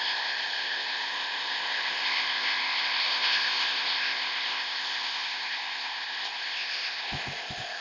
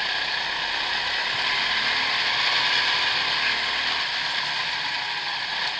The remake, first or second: first